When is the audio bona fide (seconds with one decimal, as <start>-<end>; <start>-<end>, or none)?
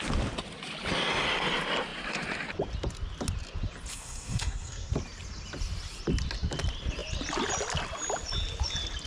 0.0-3.9; 4.9-9.1